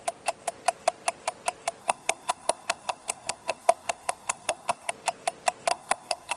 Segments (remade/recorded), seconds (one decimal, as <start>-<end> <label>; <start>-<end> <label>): 0.0-1.8 recorded; 1.8-4.9 remade; 4.9-5.7 recorded; 5.7-6.4 remade